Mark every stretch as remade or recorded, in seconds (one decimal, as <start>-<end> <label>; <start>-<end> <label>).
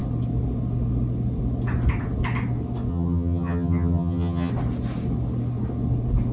0.0-2.9 recorded; 2.9-4.5 remade; 4.5-6.3 recorded